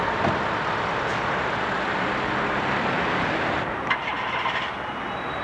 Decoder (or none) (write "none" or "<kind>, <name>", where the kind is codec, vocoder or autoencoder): none